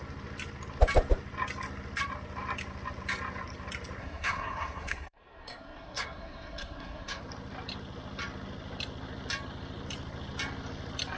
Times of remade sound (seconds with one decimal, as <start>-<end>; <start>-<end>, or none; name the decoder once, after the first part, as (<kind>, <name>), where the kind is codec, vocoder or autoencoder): 4.0-7.2 (codec, SNAC)